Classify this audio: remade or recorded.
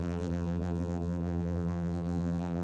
remade